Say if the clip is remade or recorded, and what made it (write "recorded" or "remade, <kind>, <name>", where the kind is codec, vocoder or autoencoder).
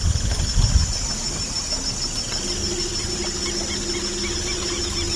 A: recorded